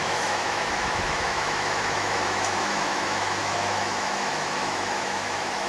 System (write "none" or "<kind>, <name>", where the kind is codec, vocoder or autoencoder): autoencoder, DAC-VAE